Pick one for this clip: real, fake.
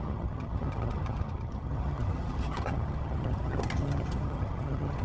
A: fake